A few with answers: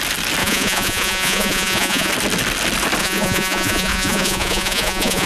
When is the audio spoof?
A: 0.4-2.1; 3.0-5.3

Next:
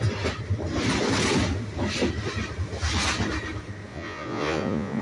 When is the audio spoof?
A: 3.9-5.0

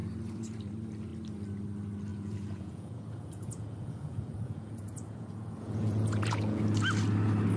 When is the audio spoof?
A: 2.1-6.6

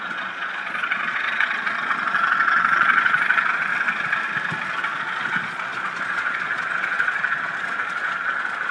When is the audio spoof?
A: 0.0-3.7; 4.8-8.7

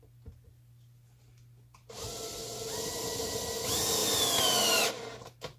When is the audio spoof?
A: none